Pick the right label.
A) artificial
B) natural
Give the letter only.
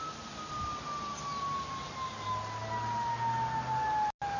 B